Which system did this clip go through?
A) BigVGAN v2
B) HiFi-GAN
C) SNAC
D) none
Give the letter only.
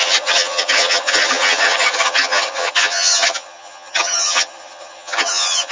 B